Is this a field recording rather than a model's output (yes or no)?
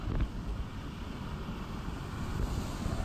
yes